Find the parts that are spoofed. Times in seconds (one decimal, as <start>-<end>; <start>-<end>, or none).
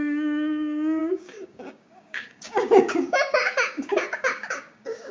0.0-5.1